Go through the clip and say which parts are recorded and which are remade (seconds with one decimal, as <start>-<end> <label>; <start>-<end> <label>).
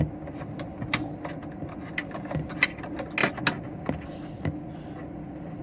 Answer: 0.0-5.6 recorded